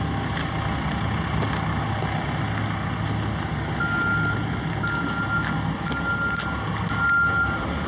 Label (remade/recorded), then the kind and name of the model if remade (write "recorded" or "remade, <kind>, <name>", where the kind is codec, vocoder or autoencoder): recorded